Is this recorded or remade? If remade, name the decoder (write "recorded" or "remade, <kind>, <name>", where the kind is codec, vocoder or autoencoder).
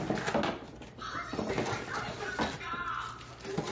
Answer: recorded